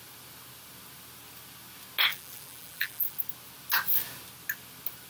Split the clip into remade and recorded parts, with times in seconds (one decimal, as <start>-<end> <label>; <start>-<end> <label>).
0.0-2.1 recorded; 2.1-3.2 remade; 3.2-5.1 recorded